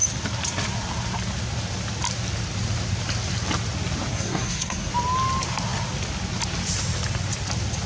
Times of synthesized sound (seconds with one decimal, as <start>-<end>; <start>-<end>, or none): 4.1-4.9